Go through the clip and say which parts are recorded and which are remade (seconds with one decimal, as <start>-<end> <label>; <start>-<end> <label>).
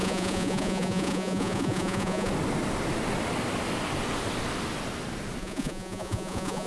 0.0-2.3 remade; 2.3-5.4 recorded; 5.4-6.7 remade